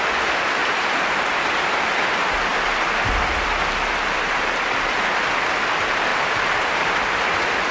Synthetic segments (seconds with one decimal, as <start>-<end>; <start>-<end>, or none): 0.6-1.8; 6.1-7.2